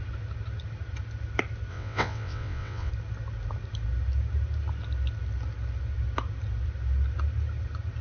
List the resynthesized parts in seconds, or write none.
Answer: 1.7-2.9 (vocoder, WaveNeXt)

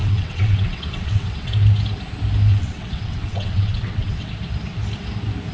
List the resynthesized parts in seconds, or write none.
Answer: 0.0-1.5 (vocoder, WaveNeXt); 2.5-4.3

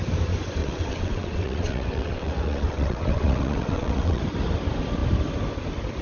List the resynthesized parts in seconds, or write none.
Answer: 0.6-4.2 (vocoder, WaveNeXt)

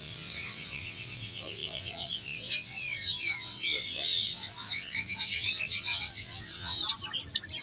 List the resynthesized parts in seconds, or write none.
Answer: 0.0-6.8 (vocoder, WaveNeXt)

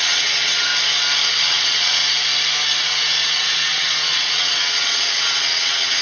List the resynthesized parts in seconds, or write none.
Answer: 0.0-0.7 (vocoder, WaveNeXt); 1.4-2.0; 2.8-6.0

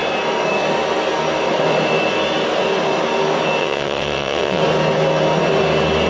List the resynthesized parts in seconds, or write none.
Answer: 3.6-4.6 (vocoder, WaveNeXt)

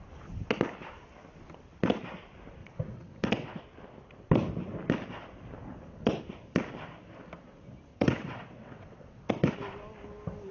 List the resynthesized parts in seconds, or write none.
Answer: 2.6-3.6 (vocoder, WaveNeXt); 7.9-9.5